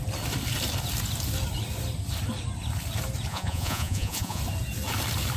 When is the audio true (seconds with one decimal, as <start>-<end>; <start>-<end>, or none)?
0.0-3.3; 4.4-5.4